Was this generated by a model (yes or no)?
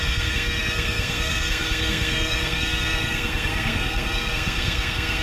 yes